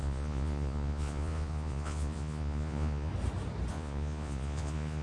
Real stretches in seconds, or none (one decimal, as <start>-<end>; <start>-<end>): 3.1-3.7